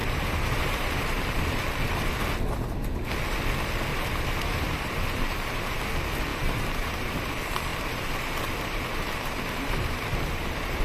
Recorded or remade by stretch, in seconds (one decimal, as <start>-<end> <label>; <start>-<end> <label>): 0.0-1.7 remade; 1.7-3.9 recorded; 3.9-5.8 remade; 5.8-6.3 recorded; 6.3-7.3 remade; 7.3-7.7 recorded; 7.7-10.8 remade